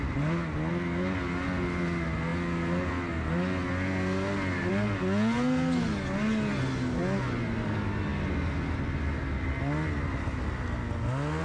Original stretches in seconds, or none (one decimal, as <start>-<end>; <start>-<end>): 0.0-11.4